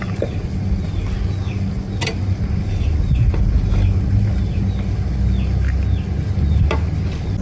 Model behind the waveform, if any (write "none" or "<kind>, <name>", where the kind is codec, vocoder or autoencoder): none